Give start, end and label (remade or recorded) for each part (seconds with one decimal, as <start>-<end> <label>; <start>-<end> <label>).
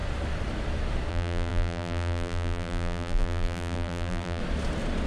0.0-1.1 recorded; 1.1-4.4 remade; 4.4-5.1 recorded